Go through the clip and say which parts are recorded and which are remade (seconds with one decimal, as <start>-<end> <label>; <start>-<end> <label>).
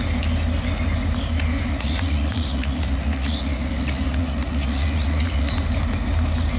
0.0-1.7 recorded; 1.7-5.5 remade; 5.5-6.6 recorded